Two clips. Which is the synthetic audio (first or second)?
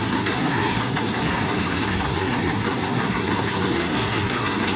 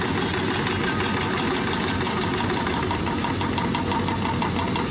first